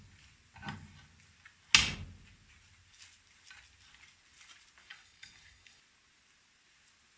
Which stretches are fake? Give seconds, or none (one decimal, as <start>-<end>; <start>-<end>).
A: 4.9-5.8